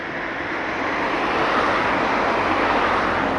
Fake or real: real